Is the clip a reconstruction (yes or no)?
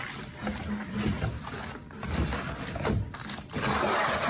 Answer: no